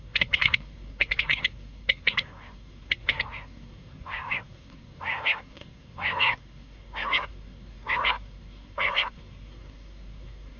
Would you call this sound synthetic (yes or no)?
yes